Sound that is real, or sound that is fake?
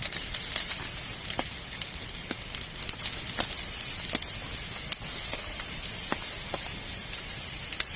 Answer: real